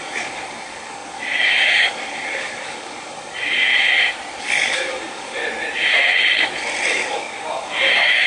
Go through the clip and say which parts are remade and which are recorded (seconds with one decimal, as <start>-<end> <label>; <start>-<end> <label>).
0.0-3.7 remade; 3.7-4.4 recorded; 4.4-5.4 remade; 5.4-6.9 recorded; 6.9-8.3 remade

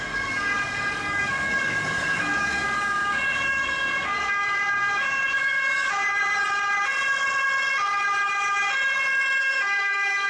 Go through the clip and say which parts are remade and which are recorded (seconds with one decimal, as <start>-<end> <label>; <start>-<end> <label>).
0.0-6.0 remade; 6.0-9.4 recorded; 9.4-10.3 remade